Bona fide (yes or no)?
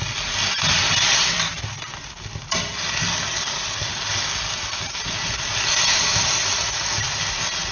yes